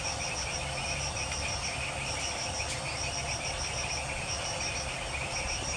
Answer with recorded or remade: recorded